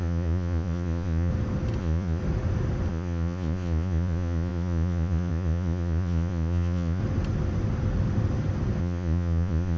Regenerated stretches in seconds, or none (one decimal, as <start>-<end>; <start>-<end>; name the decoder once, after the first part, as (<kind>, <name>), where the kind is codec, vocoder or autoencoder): 0.0-1.3 (vocoder, Vocos); 1.8-2.2; 2.9-7.0; 8.8-9.8